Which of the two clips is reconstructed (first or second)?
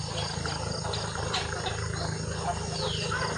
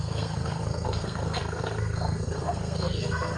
second